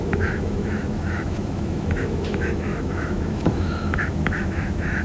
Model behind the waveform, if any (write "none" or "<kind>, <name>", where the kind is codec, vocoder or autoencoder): autoencoder, DAC-VAE